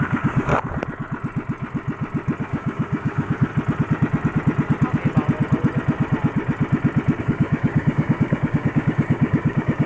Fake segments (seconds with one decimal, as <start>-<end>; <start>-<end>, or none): 0.0-0.5; 2.4-3.5; 7.2-9.9